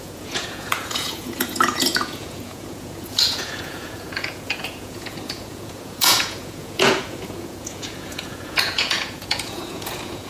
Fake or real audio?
fake